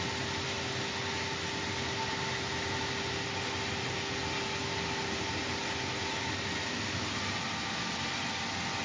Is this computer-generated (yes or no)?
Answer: no